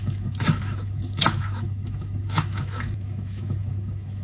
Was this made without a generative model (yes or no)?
no